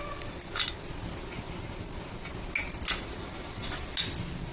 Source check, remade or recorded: recorded